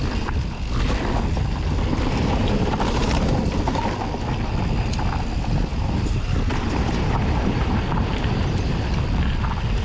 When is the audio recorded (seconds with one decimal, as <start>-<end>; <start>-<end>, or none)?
0.0-2.4; 3.4-5.7; 8.9-9.8